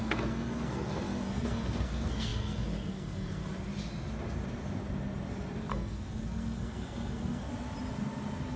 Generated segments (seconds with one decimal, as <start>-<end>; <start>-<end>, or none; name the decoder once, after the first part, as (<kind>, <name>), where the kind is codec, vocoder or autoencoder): 0.0-3.4 (codec, SNAC); 5.7-7.5